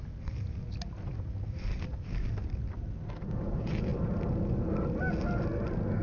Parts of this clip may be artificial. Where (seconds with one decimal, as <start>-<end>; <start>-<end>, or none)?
none